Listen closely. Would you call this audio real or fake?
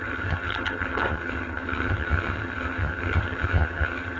fake